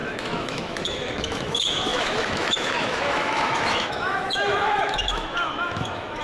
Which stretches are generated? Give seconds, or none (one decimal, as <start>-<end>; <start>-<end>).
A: 0.0-6.2